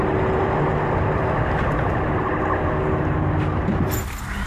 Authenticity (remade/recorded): recorded